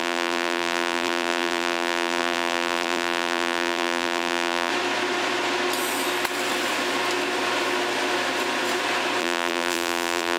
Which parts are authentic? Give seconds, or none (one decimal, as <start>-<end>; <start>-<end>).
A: 4.7-9.2